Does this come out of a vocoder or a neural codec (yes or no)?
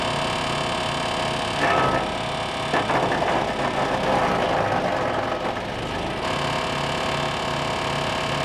no